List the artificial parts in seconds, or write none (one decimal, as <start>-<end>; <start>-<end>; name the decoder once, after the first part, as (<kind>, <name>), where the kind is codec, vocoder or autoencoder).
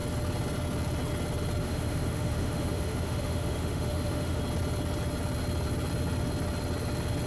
1.6-4.4 (autoencoder, DAC-VAE)